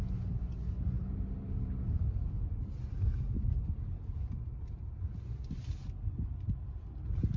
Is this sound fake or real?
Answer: real